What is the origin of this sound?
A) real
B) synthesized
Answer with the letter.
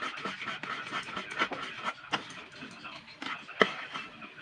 A